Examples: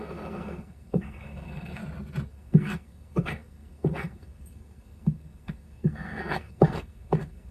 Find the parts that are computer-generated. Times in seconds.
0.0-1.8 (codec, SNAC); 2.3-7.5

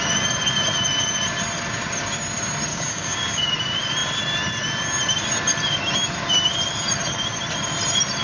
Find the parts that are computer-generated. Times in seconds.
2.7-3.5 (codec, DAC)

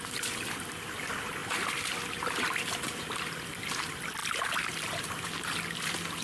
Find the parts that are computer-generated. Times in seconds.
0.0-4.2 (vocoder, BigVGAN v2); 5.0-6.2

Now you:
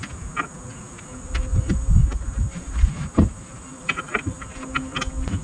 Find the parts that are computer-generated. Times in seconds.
1.5-2.0 (vocoder, BigVGAN v2); 2.4-4.4

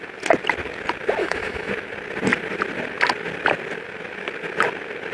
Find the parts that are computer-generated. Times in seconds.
1.2-1.7 (autoencoder, DAC-VAE)

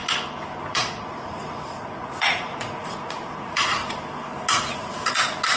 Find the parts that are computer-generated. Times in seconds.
0.7-3.8 (vocoder, Vocos); 4.7-5.6